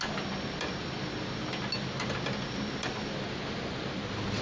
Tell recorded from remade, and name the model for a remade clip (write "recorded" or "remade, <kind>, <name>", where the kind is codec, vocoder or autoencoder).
recorded